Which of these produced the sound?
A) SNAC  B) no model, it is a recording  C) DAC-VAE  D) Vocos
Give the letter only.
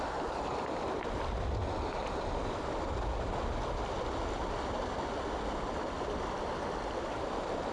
B